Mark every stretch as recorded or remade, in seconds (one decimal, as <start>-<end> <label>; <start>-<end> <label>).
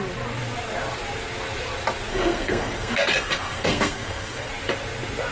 0.0-2.1 recorded; 2.1-4.5 remade; 4.5-5.3 recorded